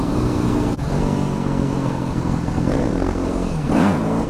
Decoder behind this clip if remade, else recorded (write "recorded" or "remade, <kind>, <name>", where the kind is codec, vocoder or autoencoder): remade, codec, SNAC